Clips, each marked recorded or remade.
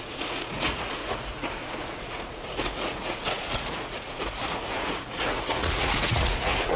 remade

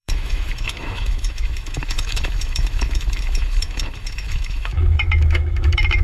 remade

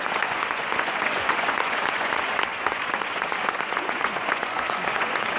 remade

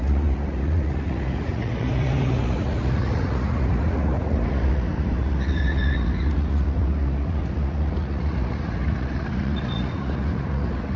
remade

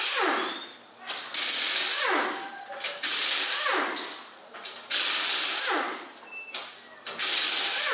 recorded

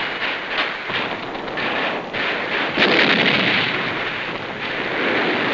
recorded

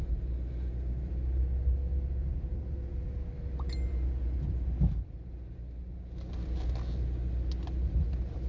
recorded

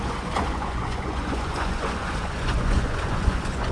remade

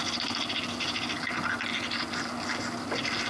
recorded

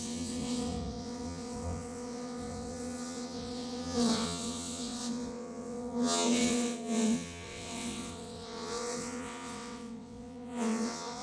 remade